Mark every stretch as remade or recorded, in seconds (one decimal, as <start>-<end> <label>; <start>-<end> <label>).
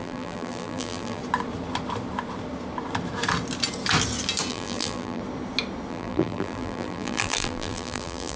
0.0-1.2 remade; 1.2-4.5 recorded; 4.5-5.2 remade; 5.2-5.9 recorded; 5.9-8.4 remade